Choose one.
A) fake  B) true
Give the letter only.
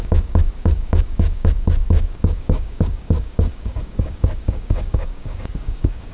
A